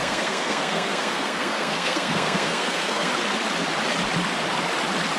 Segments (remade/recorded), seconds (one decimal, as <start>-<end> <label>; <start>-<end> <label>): 0.0-3.1 remade; 3.1-5.2 recorded